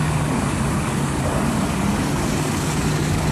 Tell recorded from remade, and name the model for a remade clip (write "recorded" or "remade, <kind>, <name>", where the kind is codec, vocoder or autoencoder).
remade, codec, DAC